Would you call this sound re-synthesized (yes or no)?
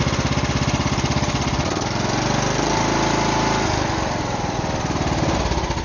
no